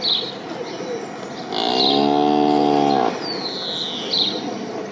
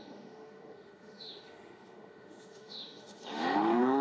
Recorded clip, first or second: first